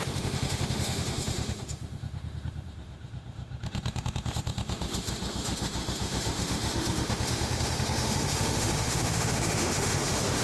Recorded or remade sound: remade